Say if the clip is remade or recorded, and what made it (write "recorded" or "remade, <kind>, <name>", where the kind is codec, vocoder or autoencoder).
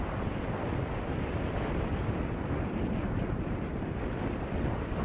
recorded